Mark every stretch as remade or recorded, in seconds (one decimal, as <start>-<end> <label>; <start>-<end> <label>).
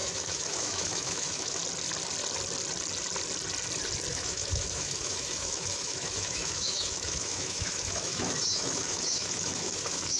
0.0-1.6 remade; 1.6-4.1 recorded; 4.1-10.2 remade